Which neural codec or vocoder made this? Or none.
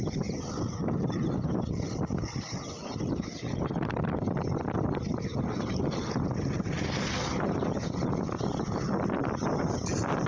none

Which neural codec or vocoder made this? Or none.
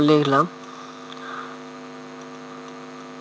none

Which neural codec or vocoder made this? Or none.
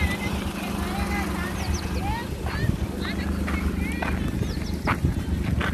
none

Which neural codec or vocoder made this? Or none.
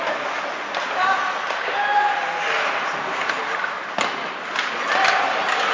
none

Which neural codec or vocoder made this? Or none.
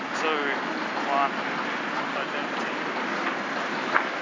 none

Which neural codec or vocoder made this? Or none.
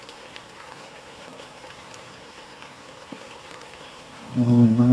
codec, SNAC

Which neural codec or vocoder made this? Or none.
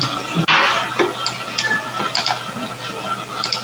none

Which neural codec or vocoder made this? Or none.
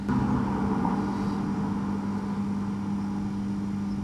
none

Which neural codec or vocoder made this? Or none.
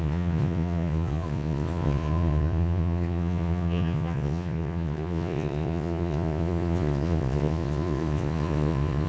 vocoder, Vocos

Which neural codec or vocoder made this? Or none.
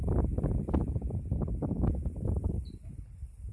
none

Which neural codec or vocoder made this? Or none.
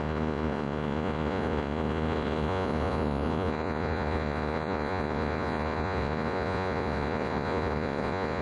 vocoder, Vocos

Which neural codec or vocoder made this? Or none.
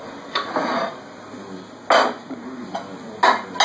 none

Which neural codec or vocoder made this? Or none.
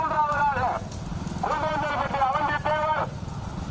none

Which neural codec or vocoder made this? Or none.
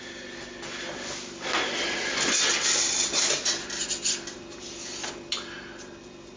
none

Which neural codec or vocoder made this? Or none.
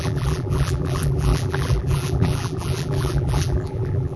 vocoder, BigVGAN v2